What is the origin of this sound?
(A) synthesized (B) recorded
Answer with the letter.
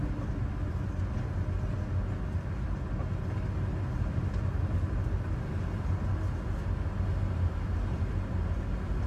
B